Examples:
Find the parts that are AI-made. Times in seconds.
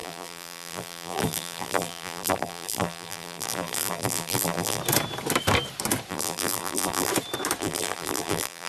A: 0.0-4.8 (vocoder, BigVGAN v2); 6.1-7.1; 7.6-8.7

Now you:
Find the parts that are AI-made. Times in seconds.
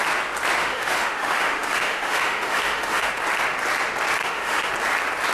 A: 0.6-3.1 (autoencoder, DAC-VAE); 4.2-4.7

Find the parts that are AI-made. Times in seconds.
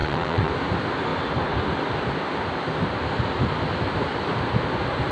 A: 0.0-0.5 (vocoder, WaveNeXt)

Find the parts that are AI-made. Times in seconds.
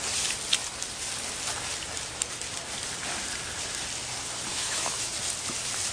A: 4.5-5.1 (autoencoder, DAC-VAE)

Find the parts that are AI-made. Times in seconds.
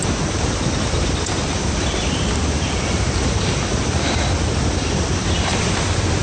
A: none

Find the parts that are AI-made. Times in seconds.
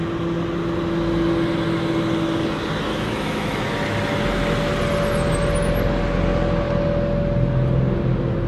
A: 2.9-3.6 (autoencoder, DAC-VAE)